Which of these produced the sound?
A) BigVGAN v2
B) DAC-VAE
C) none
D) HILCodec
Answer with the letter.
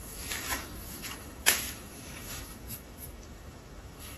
B